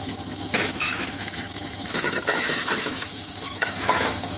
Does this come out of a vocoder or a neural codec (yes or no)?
yes